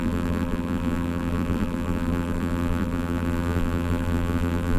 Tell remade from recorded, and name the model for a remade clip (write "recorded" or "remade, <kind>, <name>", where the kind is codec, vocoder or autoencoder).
remade, vocoder, BigVGAN v2